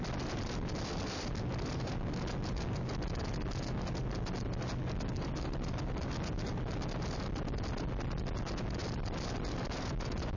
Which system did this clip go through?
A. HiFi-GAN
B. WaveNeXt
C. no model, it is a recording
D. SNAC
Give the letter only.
C